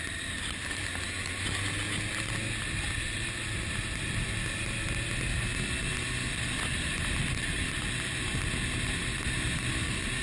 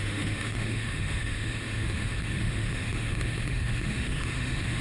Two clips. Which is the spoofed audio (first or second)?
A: second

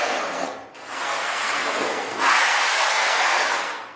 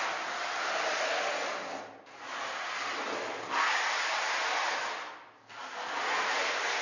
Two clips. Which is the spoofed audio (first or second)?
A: first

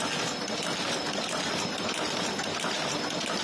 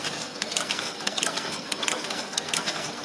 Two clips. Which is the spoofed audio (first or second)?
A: second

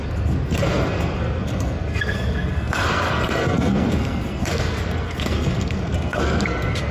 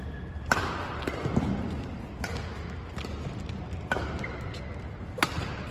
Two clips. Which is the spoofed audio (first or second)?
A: first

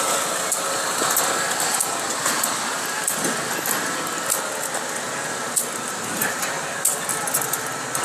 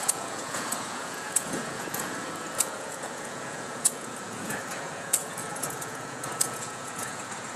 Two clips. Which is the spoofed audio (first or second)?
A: second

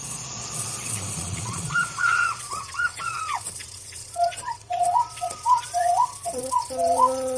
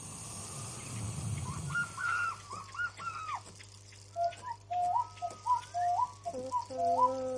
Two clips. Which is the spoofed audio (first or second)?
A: first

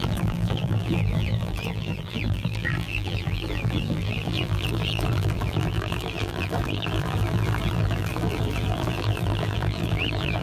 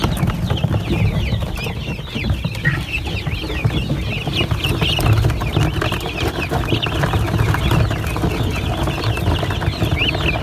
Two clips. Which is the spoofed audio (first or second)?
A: first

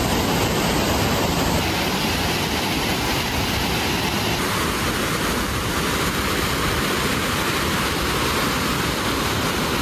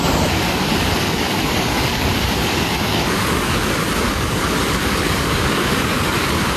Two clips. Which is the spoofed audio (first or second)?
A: second